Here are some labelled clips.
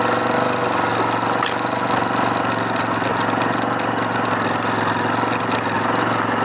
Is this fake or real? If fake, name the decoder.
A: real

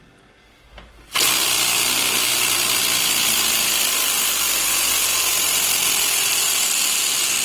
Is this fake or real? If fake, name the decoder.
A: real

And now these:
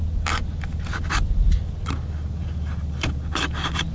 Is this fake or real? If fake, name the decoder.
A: real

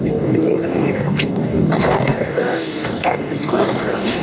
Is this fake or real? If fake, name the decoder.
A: fake, codec, DAC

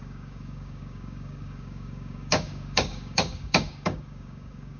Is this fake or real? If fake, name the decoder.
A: fake, codec, DAC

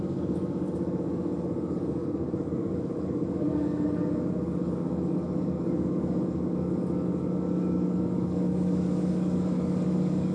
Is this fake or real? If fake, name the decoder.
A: fake, codec, DAC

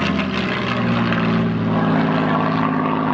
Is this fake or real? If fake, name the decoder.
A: real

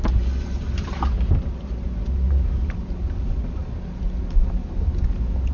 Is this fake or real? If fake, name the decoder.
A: real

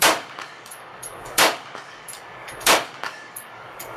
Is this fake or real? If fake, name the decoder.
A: fake, codec, DAC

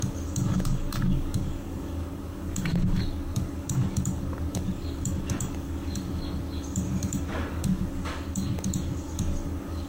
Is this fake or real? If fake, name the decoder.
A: fake, codec, DAC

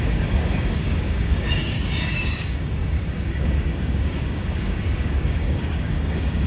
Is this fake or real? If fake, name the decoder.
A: fake, codec, DAC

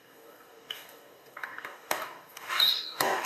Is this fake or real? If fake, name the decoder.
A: fake, codec, DAC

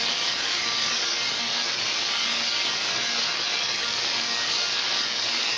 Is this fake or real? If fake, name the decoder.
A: fake, codec, DAC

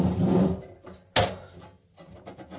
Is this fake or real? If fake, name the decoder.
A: real